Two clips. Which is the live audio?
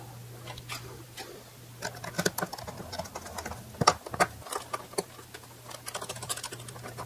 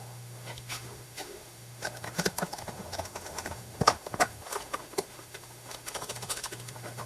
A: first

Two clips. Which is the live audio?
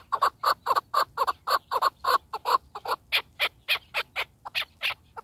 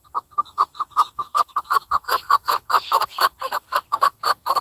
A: first